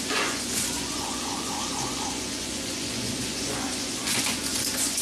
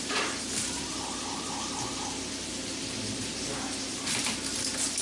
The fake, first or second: first